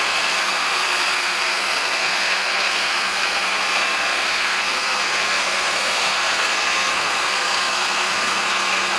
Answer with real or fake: fake